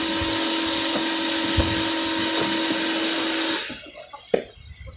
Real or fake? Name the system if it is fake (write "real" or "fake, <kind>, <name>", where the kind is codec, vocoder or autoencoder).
real